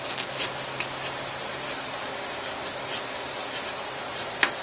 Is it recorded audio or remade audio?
recorded